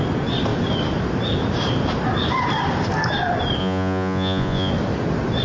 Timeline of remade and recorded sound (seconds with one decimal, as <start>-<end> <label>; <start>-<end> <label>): 0.0-3.6 recorded; 3.6-4.7 remade; 4.7-5.4 recorded

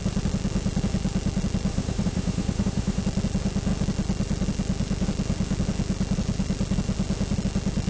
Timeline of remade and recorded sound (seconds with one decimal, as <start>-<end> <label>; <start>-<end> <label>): 0.0-1.7 recorded; 1.7-3.0 remade; 3.0-7.9 recorded

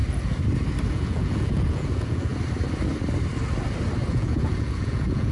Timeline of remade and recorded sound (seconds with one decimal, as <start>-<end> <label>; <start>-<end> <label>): 0.0-0.9 recorded; 0.9-2.3 remade; 2.3-4.1 recorded; 4.1-5.3 remade

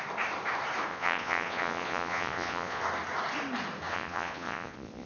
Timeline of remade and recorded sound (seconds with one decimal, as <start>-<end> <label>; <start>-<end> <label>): 0.0-0.9 recorded; 0.9-2.8 remade; 2.8-3.9 recorded; 3.9-5.1 remade

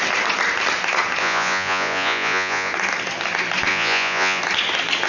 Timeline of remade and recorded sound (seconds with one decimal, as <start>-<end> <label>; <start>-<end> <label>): 0.0-1.2 recorded; 1.2-2.7 remade; 2.7-3.7 recorded; 3.7-4.4 remade; 4.4-5.1 recorded

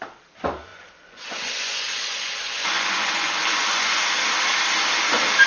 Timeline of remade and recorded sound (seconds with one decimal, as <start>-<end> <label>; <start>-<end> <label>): 0.0-0.7 recorded; 0.7-4.0 remade; 4.0-5.5 recorded